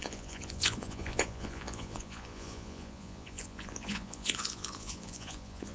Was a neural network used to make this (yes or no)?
yes